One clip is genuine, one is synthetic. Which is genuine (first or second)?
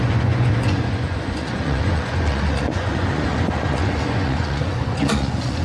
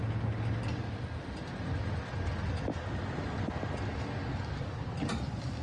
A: second